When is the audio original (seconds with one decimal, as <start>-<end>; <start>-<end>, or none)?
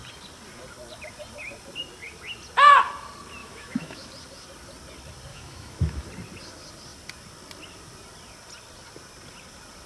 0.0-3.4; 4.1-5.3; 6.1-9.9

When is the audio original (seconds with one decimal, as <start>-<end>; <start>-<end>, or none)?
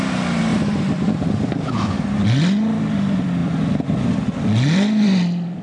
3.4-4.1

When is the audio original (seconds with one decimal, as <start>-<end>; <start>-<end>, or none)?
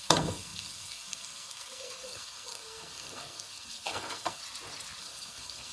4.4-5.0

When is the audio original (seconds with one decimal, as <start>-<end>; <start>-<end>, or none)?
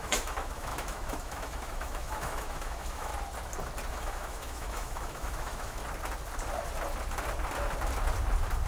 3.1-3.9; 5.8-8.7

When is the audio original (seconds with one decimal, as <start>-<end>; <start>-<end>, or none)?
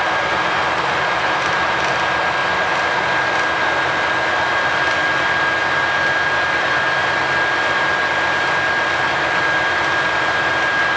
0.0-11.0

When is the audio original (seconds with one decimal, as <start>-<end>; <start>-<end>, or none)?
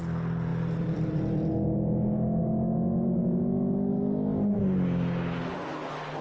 0.0-0.5; 1.5-6.2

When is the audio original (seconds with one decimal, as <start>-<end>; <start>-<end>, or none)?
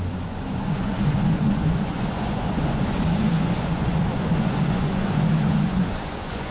none